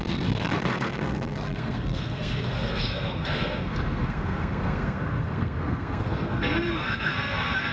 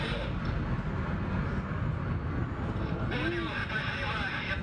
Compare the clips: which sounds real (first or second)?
second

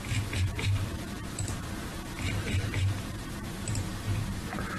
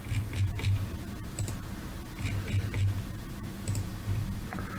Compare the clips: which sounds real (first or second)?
second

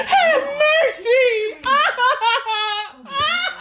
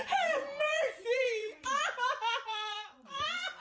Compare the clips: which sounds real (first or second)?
first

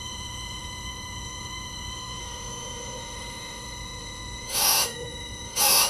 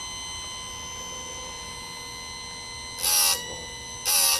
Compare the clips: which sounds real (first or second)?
second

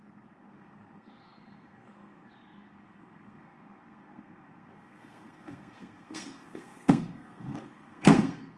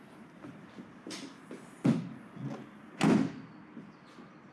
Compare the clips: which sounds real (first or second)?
second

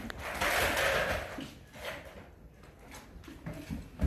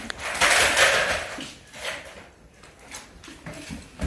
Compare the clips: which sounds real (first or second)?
first